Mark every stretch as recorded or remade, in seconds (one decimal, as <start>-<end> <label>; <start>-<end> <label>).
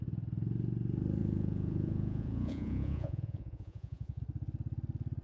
0.0-1.2 recorded; 1.2-4.2 remade; 4.2-5.2 recorded